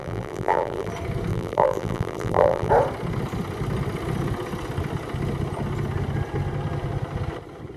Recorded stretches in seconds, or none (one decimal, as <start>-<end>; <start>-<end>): 0.9-1.3; 2.7-7.8